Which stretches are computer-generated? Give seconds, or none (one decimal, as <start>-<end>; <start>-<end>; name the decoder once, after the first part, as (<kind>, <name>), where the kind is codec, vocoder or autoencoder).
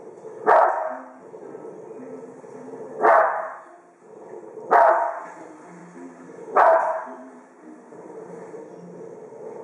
5.8-8.6 (vocoder, BigVGAN v2)